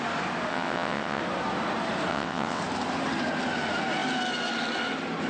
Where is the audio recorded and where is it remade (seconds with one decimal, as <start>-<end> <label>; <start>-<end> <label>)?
0.0-0.5 recorded; 0.5-1.2 remade; 1.2-2.1 recorded; 2.1-2.6 remade; 2.6-5.3 recorded

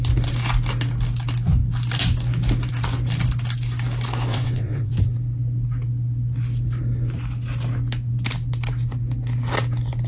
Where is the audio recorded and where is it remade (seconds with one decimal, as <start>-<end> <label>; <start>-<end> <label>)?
0.0-4.3 recorded; 4.3-4.9 remade; 4.9-10.1 recorded

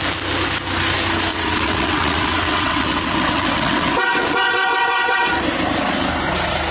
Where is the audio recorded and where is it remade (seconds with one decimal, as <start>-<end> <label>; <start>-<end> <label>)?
0.0-1.3 recorded; 1.3-5.3 remade; 5.3-6.7 recorded

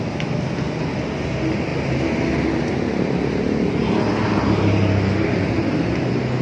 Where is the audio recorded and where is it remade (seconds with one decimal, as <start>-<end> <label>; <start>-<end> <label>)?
0.0-6.4 recorded

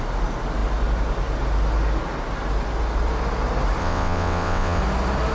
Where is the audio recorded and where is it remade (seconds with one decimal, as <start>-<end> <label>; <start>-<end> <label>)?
0.0-3.8 recorded; 3.8-4.8 remade; 4.8-5.3 recorded

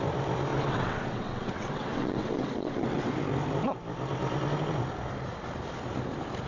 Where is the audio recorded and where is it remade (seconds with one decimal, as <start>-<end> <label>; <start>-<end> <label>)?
0.0-0.5 recorded; 0.5-3.1 remade; 3.1-6.5 recorded